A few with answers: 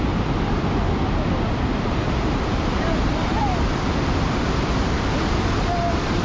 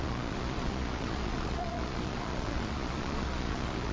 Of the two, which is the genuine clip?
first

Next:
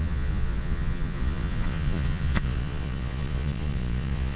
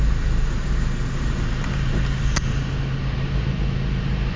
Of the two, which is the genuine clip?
second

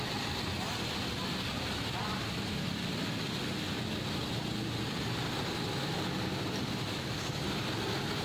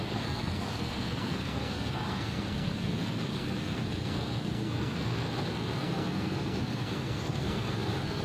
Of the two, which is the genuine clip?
first